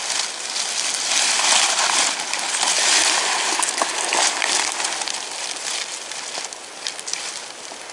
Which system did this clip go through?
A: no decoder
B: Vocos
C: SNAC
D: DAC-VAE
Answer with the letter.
A